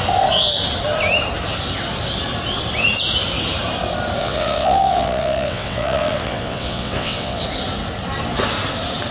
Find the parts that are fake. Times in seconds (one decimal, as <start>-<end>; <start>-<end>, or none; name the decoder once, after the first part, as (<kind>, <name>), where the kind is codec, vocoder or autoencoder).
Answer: 4.2-7.4 (vocoder, WaveNeXt)